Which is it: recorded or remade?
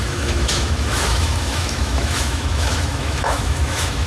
remade